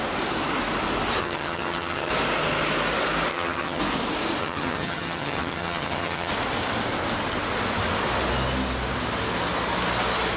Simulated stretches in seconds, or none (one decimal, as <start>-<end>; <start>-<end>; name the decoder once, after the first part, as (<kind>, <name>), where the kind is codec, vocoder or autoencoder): 1.2-2.1 (vocoder, HiFi-GAN); 3.3-3.8; 4.4-6.3